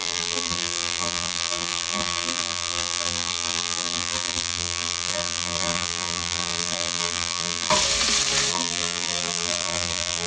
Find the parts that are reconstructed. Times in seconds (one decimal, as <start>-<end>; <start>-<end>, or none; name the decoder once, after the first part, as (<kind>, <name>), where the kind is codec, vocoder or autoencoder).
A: 0.0-7.7 (vocoder, BigVGAN v2); 8.5-10.3